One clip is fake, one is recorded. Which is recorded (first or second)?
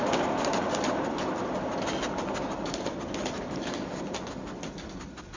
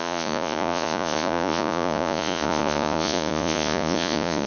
first